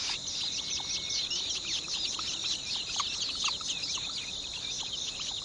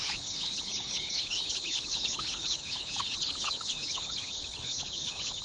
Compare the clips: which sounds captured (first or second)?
first